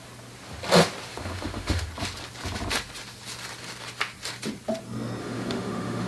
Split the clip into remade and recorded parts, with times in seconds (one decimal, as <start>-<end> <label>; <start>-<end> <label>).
0.0-1.1 recorded; 1.1-1.9 remade; 1.9-5.2 recorded; 5.2-6.1 remade